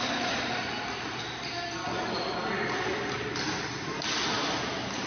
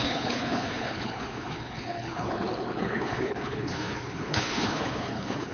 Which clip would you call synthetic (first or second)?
second